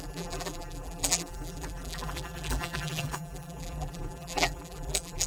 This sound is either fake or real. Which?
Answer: fake